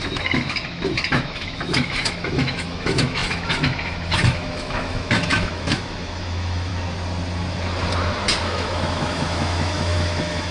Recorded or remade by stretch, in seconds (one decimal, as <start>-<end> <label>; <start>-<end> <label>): 0.0-6.7 remade; 6.7-8.4 recorded; 8.4-10.5 remade